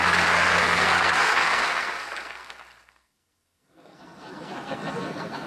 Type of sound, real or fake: fake